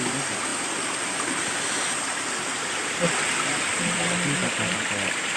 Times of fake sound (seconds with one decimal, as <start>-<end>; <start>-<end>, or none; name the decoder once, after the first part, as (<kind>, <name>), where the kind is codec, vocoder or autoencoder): none